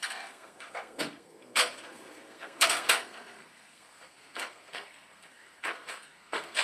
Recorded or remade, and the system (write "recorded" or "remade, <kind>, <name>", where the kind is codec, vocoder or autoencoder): remade, codec, SNAC